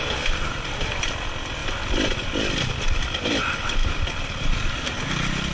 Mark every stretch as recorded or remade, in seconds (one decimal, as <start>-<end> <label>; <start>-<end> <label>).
0.0-5.5 recorded